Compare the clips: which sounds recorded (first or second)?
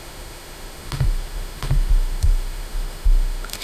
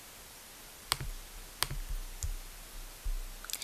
second